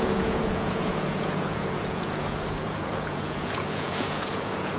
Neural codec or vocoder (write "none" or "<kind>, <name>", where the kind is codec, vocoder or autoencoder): vocoder, Vocos